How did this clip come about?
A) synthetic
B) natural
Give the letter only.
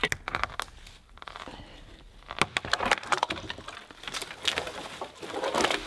B